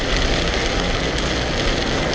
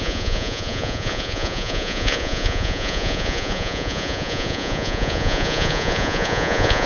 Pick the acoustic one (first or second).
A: first